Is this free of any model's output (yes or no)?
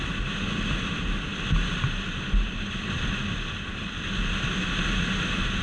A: yes